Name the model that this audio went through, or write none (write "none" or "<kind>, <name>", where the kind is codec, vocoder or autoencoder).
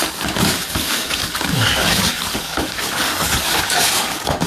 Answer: codec, DAC